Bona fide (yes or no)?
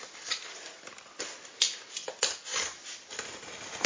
yes